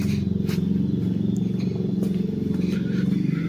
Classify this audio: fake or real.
real